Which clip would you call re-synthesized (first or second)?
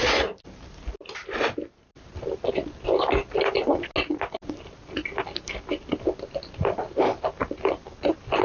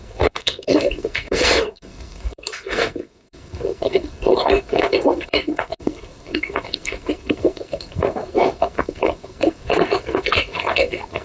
second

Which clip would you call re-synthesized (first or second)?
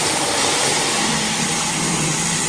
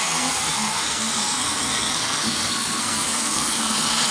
second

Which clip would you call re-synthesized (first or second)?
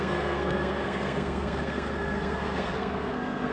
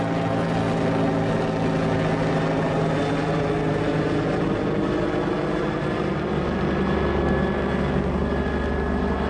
first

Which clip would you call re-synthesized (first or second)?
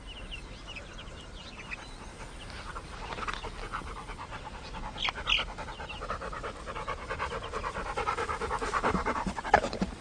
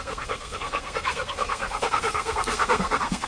second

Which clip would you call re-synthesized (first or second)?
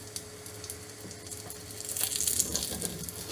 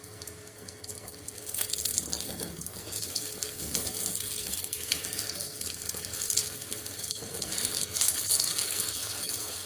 second